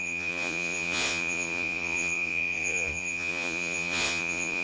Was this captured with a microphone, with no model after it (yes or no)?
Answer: no